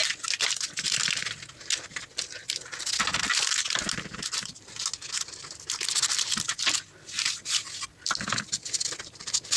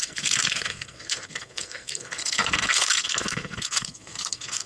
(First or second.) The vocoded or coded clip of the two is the second